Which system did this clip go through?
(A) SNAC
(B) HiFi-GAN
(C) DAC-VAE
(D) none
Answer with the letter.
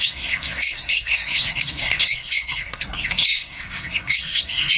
A